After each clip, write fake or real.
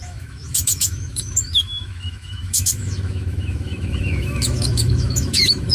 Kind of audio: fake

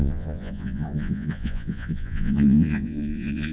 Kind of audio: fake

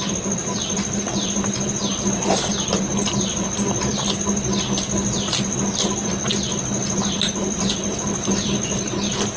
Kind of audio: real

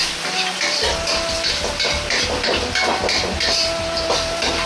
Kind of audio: real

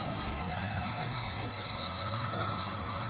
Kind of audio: fake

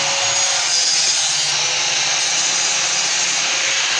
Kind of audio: real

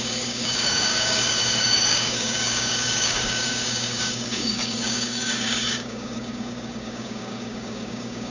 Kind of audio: fake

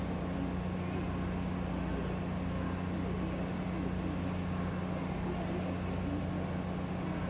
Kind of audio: real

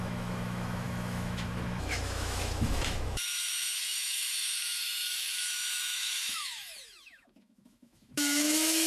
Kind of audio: fake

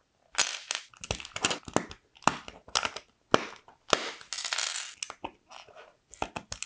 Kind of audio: real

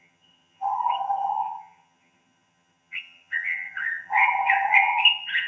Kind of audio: fake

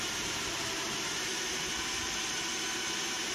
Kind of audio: fake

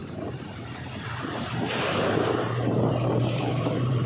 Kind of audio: fake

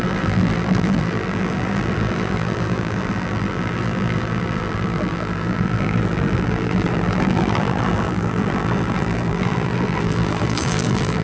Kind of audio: fake